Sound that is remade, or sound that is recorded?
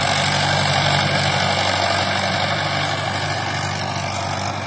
recorded